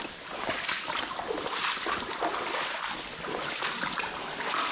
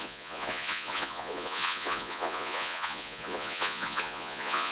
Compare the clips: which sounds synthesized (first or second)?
second